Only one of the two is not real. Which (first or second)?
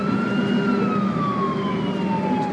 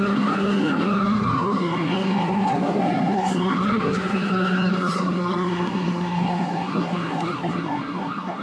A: second